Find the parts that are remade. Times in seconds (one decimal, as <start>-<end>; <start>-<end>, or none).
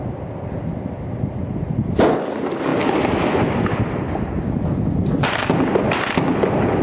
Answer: none